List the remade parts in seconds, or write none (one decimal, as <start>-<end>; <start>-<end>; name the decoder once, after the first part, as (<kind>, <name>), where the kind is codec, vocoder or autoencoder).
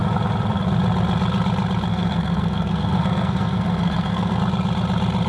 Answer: 1.9-4.4 (codec, SNAC)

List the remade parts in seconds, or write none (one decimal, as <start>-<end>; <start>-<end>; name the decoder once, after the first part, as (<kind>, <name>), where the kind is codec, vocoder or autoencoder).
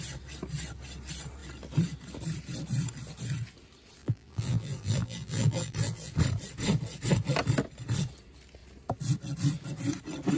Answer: 4.0-6.1 (vocoder, BigVGAN v2)